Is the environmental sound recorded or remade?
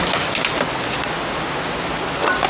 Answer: recorded